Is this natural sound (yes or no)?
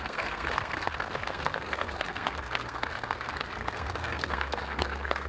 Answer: no